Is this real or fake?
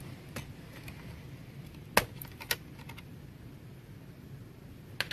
real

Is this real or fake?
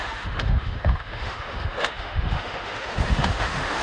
fake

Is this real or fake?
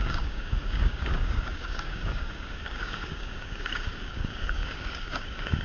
fake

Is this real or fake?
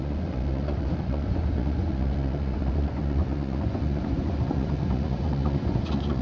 fake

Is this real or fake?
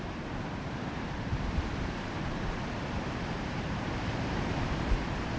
fake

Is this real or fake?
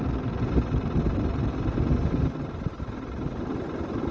real